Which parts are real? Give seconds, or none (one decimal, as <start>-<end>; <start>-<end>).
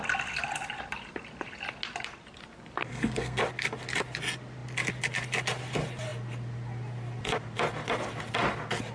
0.0-2.9; 3.4-8.9